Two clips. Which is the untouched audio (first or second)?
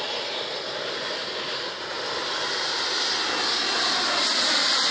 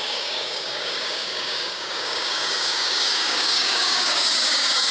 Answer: first